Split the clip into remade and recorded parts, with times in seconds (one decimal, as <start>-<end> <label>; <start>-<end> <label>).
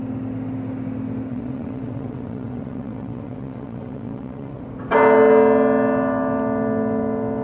0.0-1.3 recorded; 1.3-4.6 remade; 4.6-7.4 recorded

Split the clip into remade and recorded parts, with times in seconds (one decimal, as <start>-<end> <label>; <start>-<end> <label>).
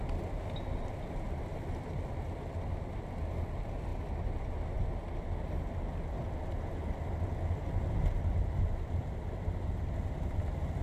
0.0-10.8 recorded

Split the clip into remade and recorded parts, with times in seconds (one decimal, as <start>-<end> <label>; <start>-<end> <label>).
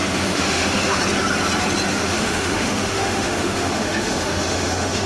0.0-1.0 remade; 1.0-1.9 recorded; 1.9-5.1 remade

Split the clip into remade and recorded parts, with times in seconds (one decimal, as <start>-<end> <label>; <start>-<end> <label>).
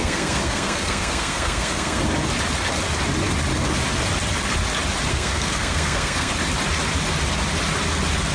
0.0-2.0 remade; 2.0-5.1 recorded; 5.1-6.3 remade; 6.3-8.3 recorded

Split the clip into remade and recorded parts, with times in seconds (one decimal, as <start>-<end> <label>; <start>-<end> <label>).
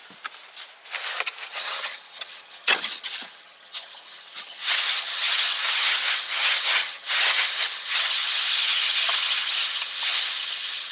0.0-1.5 recorded; 1.5-10.9 remade